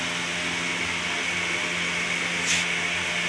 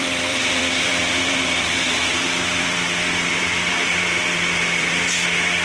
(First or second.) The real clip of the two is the first